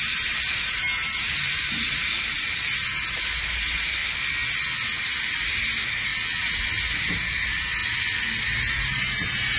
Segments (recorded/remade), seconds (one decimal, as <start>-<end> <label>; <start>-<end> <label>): 0.0-4.0 remade; 4.0-5.0 recorded; 5.0-6.1 remade; 6.1-7.0 recorded; 7.0-7.8 remade; 7.8-8.4 recorded; 8.4-9.6 remade